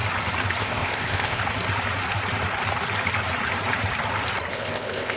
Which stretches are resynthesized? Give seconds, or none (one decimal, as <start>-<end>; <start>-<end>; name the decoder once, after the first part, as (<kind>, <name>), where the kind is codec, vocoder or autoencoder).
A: 0.6-1.4 (codec, ZipCodec); 4.5-5.2